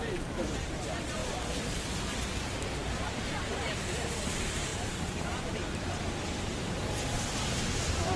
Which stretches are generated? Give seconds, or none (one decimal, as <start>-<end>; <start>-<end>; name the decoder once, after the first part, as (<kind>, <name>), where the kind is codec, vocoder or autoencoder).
0.0-1.2 (vocoder, BigVGAN v2); 3.0-8.2